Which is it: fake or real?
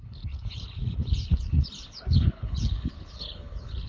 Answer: fake